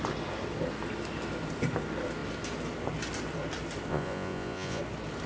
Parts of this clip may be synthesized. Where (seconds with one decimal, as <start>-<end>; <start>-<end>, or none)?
3.9-4.8